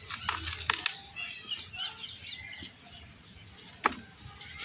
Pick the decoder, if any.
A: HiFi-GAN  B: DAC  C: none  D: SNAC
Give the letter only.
C